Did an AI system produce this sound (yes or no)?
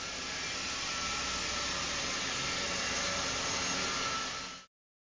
no